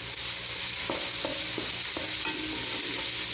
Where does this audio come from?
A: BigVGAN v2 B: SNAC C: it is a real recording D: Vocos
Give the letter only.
C